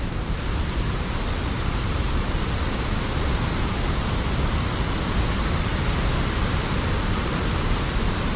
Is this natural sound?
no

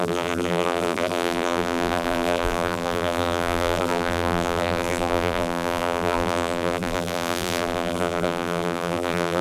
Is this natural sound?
no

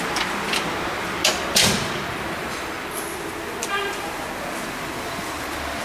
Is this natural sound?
yes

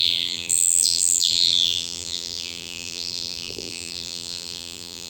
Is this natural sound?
no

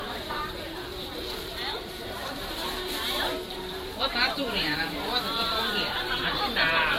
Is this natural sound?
no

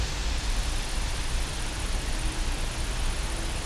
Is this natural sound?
yes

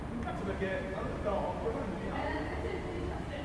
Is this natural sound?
yes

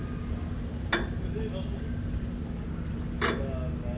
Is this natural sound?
yes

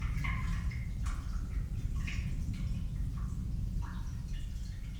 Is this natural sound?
yes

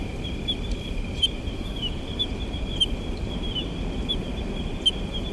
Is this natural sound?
no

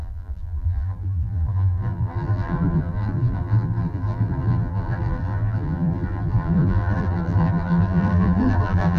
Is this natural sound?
no